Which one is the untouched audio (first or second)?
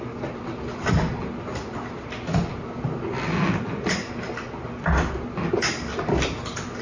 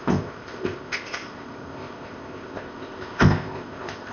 first